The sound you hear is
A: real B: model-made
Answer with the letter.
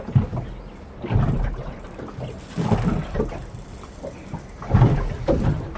A